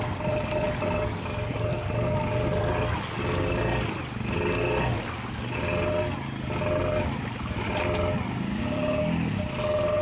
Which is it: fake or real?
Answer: real